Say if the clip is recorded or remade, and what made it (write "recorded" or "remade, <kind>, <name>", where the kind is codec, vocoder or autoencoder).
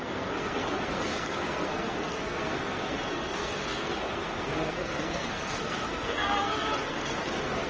remade, codec, SNAC